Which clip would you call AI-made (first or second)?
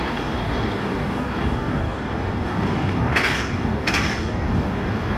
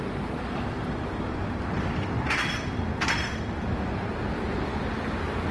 first